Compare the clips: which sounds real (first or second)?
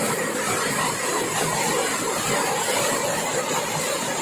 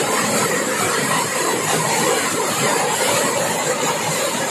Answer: first